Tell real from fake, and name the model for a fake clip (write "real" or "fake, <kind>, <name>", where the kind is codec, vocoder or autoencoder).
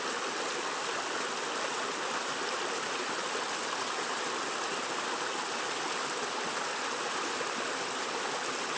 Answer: real